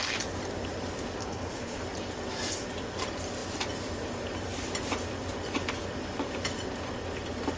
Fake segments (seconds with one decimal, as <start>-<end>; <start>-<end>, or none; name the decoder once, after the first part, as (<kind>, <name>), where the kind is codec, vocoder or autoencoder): 1.2-1.8 (codec, HILCodec)

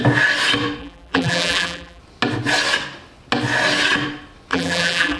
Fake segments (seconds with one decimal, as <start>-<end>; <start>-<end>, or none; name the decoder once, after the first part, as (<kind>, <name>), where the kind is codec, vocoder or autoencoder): 0.8-2.0 (vocoder, BigVGAN v2); 4.5-5.2

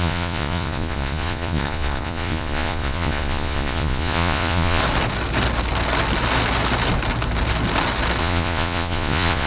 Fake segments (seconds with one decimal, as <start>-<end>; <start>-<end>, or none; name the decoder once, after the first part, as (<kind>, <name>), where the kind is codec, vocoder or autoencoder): 0.0-4.8 (vocoder, Vocos); 8.2-9.5

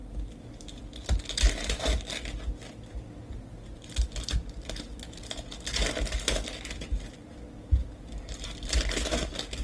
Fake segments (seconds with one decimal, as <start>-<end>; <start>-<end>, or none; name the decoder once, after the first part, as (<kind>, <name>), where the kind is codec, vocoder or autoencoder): none

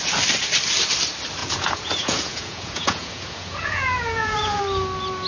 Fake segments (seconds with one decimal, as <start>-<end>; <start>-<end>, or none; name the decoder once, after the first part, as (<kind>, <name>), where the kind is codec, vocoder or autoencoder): 1.4-4.6 (vocoder, Vocos)

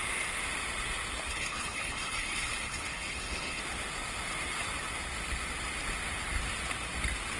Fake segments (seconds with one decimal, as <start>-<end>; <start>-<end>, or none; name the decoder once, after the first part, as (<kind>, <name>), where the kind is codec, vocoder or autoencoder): 1.3-3.6 (codec, HILCodec)

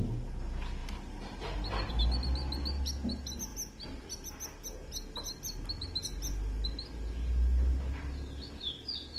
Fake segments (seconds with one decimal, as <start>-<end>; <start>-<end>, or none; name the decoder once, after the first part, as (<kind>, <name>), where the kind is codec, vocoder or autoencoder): none

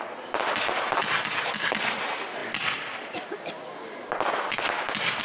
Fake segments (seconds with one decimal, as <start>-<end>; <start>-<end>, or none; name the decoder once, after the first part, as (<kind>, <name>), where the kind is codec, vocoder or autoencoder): none